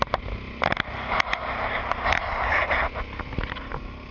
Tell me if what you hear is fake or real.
real